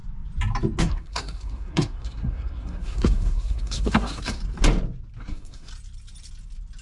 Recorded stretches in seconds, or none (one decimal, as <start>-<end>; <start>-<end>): 0.0-0.8; 4.4-5.2; 5.7-6.8